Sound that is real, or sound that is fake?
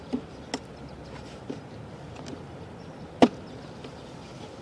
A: real